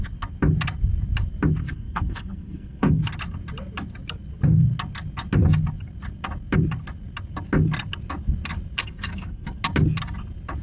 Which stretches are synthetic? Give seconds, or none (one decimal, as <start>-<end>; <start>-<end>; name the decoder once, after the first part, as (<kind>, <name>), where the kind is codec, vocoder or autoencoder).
1.6-3.1 (codec, SNAC); 8.8-9.6